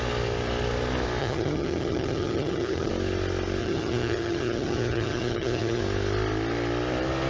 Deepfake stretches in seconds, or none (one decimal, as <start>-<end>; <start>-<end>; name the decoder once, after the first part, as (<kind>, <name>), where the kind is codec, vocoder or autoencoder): 1.2-2.9 (vocoder, HiFi-GAN); 3.6-5.8